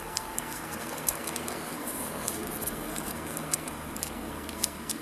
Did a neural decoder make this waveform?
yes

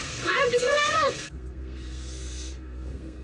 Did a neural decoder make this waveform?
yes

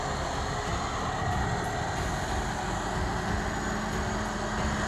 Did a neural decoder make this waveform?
no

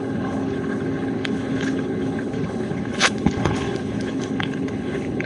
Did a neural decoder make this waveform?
yes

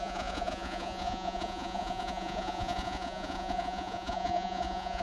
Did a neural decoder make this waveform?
yes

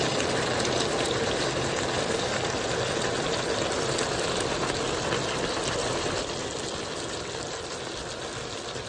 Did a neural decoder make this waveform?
no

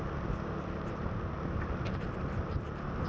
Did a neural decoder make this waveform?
no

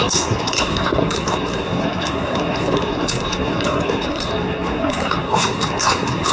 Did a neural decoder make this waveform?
yes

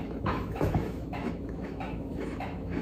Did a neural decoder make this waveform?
yes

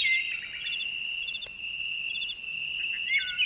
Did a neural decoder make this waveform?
no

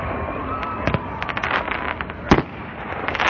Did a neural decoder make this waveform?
no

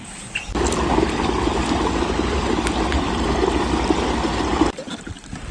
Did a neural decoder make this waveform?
no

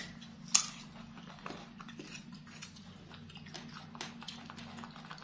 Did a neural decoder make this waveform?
no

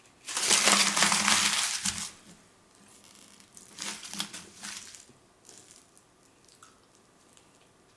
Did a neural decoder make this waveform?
no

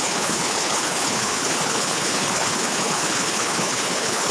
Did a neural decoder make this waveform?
yes